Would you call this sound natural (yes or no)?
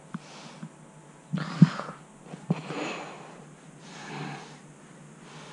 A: yes